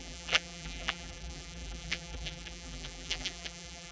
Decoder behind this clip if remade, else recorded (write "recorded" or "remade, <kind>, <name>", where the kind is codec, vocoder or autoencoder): remade, vocoder, BigVGAN v2